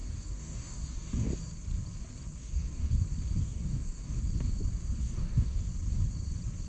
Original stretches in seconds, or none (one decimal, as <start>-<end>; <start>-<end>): 1.4-2.4; 3.0-3.4; 4.2-5.0; 5.6-6.7